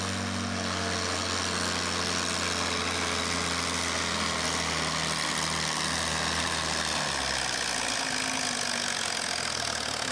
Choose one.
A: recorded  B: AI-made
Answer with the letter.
A